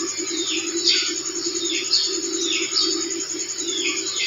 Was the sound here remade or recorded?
recorded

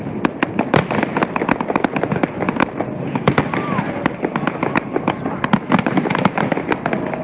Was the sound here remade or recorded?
recorded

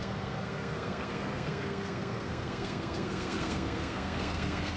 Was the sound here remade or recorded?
remade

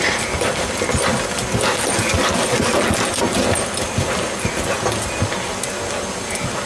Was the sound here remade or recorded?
recorded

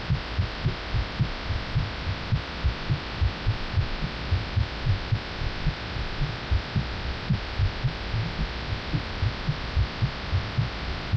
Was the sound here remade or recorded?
recorded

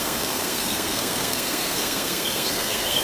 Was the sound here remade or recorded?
remade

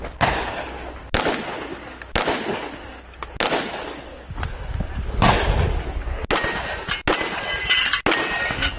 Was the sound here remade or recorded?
recorded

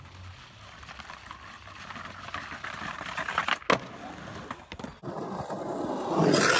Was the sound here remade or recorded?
recorded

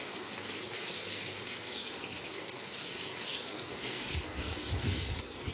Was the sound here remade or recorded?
remade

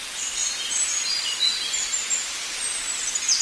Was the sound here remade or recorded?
recorded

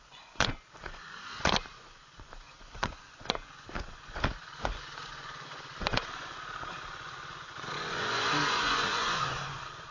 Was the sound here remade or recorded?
remade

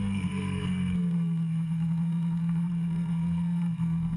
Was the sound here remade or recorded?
remade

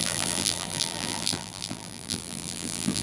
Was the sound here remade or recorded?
remade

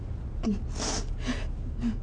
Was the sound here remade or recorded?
recorded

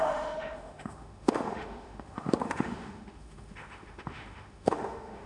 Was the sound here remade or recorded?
remade